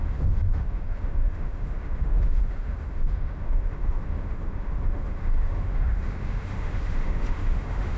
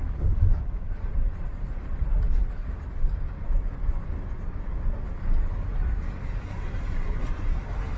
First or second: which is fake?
first